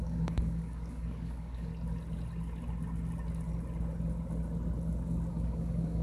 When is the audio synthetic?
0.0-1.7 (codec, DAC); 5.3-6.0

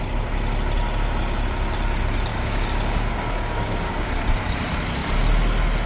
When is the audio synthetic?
2.3-4.1 (codec, DAC)

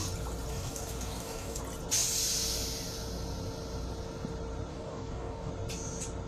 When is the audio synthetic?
0.5-1.6 (codec, DAC); 4.7-5.5

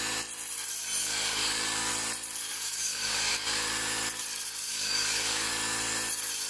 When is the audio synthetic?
1.0-1.9 (codec, DAC); 2.5-3.3; 4.7-5.5